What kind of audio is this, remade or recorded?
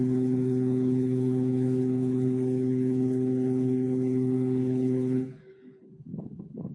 remade